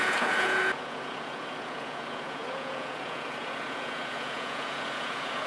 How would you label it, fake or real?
fake